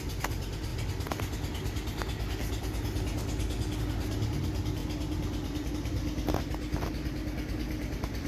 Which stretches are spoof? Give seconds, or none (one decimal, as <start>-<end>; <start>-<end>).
none